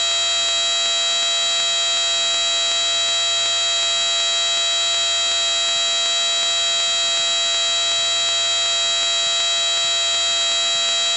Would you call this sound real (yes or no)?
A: yes